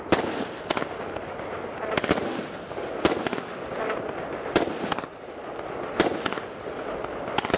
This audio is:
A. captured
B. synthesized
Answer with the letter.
A